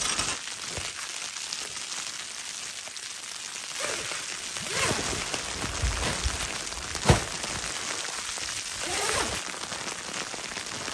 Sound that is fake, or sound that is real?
real